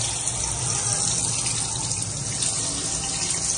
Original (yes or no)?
yes